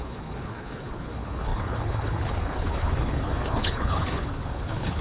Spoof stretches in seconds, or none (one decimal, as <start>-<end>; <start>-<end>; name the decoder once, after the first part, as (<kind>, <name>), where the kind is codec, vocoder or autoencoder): 0.0-5.0 (codec, HILCodec)